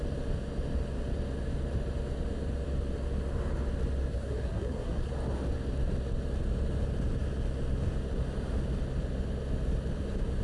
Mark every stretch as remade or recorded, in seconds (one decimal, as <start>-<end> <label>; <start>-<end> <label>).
0.0-4.1 recorded; 4.1-5.1 remade; 5.1-10.4 recorded